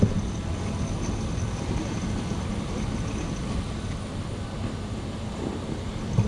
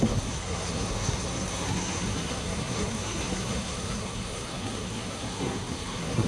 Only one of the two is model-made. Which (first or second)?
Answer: second